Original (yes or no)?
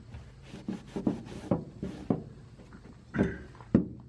yes